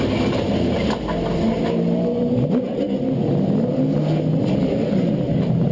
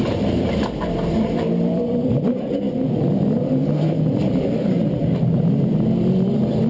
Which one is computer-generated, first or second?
second